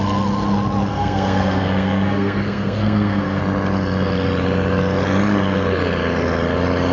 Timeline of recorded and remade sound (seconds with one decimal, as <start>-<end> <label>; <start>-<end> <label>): 0.0-0.9 recorded; 0.9-3.4 remade; 3.4-6.9 recorded